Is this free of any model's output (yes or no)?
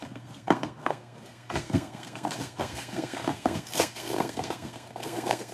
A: no